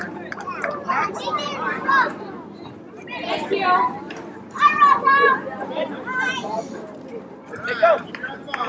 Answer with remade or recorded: remade